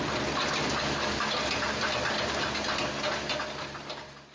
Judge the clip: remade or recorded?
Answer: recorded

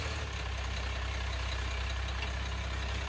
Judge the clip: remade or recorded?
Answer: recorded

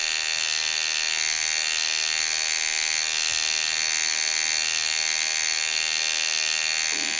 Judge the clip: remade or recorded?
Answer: recorded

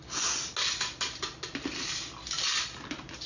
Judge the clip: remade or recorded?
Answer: recorded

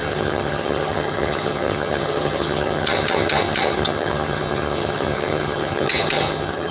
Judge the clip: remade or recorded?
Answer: remade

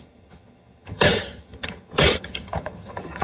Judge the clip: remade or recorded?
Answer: remade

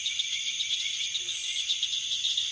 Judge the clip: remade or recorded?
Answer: remade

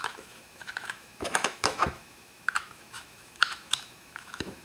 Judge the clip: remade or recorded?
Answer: remade